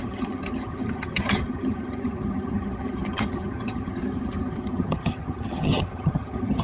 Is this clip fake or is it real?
fake